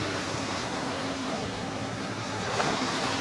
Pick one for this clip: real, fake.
fake